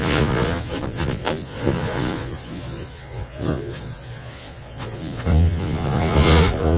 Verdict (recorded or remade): remade